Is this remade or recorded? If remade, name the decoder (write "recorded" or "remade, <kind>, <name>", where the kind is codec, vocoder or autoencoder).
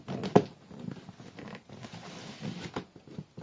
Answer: recorded